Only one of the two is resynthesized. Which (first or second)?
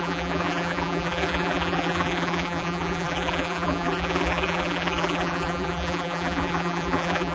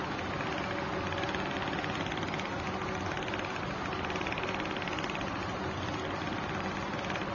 first